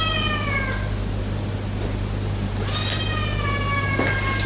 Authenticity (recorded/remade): recorded